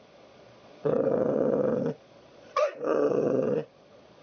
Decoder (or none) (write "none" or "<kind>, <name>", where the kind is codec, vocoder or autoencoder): vocoder, Vocos